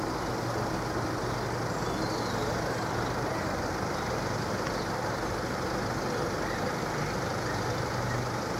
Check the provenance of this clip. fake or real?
real